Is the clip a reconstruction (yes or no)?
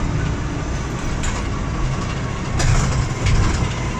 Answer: no